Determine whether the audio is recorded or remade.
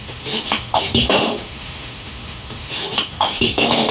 remade